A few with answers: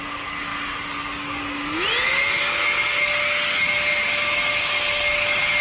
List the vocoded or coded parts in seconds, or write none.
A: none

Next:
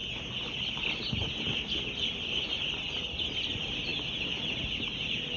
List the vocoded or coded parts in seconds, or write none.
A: none

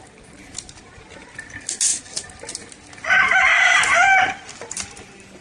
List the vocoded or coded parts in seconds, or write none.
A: none

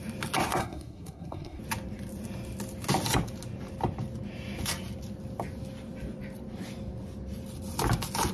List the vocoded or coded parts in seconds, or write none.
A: 0.6-1.6 (codec, SNAC)

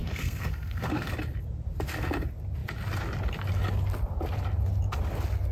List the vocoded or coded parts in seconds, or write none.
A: 0.0-1.1 (codec, SNAC)